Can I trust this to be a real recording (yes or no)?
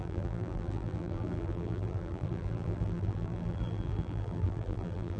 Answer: no